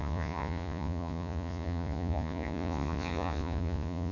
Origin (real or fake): fake